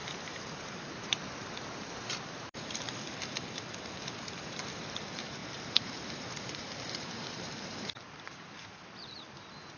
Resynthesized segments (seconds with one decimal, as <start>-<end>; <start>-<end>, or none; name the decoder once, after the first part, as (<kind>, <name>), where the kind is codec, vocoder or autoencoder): 0.0-9.8 (vocoder, BigVGAN v2)